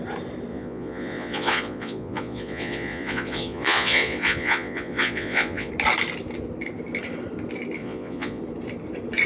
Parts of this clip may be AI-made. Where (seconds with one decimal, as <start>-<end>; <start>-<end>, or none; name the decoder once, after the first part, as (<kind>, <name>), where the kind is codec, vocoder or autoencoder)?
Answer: 0.5-5.7 (vocoder, Vocos); 7.8-8.4